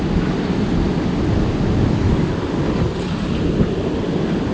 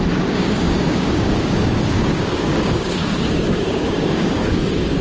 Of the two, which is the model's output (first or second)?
second